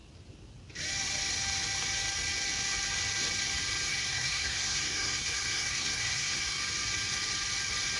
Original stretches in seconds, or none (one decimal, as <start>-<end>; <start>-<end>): 0.0-3.9; 6.6-8.0